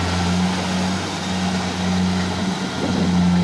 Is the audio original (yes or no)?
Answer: yes